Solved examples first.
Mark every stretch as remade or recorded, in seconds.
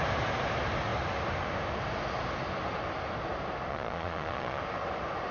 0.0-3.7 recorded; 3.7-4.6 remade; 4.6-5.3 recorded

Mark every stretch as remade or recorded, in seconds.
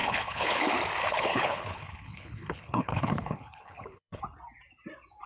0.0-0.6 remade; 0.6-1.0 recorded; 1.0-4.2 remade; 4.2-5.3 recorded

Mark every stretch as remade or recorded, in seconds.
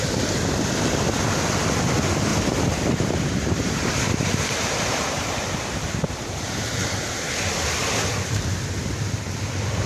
0.0-2.3 recorded; 2.3-7.2 remade; 7.2-9.9 recorded